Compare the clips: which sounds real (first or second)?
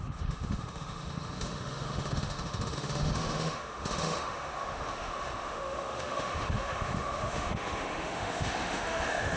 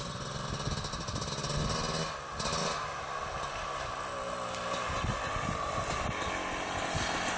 second